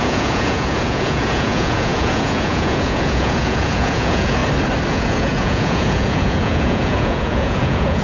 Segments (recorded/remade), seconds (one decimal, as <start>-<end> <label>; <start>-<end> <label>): 0.0-4.4 remade; 4.4-4.9 recorded; 4.9-8.0 remade